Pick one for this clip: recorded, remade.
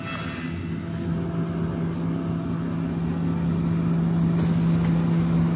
recorded